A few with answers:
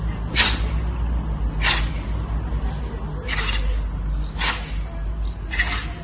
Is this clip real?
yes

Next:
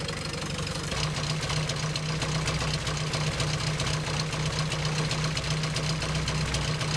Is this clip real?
yes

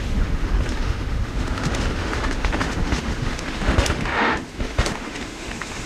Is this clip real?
no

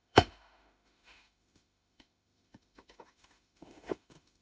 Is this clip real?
no